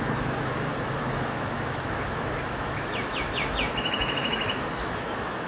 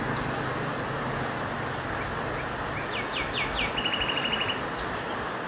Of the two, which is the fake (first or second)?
first